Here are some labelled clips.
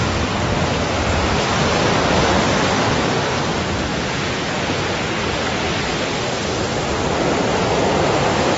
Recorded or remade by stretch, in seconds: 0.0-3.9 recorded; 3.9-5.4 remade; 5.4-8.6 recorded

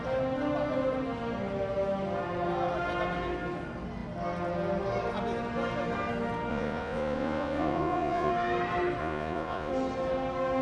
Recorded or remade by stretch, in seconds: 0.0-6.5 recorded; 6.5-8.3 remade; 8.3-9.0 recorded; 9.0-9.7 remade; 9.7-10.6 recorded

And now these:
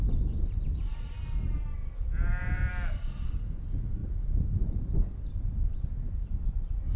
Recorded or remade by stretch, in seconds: 0.0-1.8 recorded; 1.8-2.7 remade; 2.7-7.0 recorded

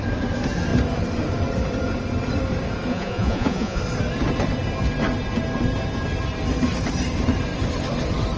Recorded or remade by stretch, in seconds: 0.0-2.9 recorded; 2.9-3.8 remade; 3.8-8.4 recorded